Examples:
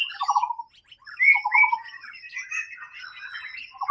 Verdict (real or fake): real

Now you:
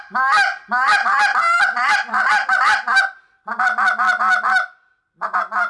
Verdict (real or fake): real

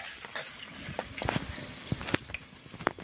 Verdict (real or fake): real